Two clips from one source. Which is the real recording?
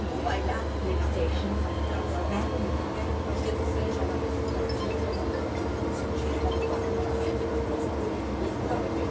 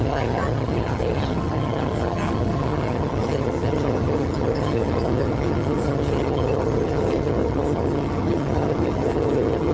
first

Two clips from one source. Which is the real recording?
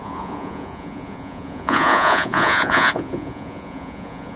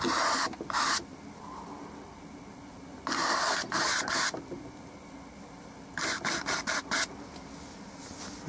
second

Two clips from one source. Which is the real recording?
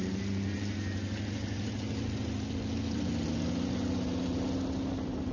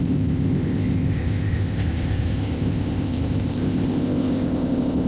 first